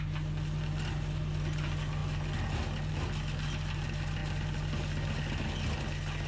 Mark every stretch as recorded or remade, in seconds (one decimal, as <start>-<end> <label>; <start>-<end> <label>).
0.0-6.3 recorded